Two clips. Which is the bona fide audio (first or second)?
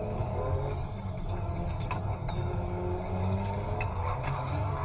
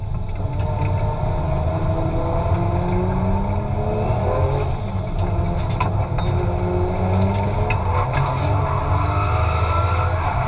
second